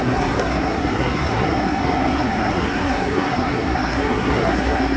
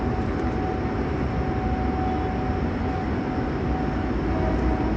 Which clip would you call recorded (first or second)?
second